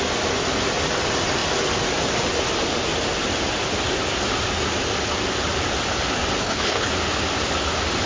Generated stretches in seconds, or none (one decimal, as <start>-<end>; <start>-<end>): 6.4-6.9